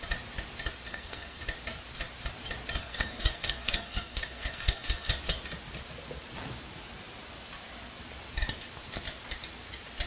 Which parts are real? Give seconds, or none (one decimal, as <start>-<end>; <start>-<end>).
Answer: 0.0-0.9; 1.4-2.8; 5.1-10.1